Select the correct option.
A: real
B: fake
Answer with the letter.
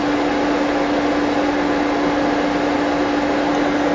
A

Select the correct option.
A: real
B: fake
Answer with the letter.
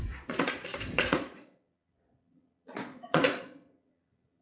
B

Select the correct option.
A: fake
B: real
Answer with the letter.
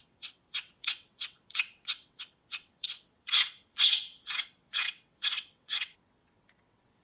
A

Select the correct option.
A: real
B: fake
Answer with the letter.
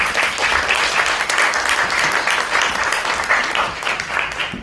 A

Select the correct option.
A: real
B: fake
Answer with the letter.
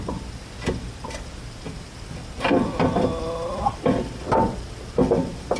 A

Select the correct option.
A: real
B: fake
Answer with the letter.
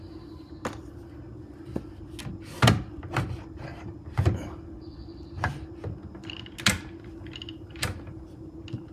A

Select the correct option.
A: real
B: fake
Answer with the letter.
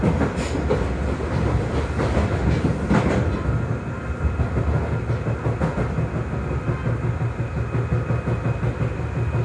A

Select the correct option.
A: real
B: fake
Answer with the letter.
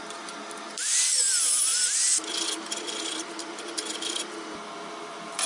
A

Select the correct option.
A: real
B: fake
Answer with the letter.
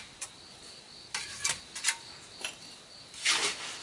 A